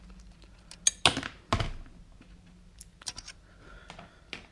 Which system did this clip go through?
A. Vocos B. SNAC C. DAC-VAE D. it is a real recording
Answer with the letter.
D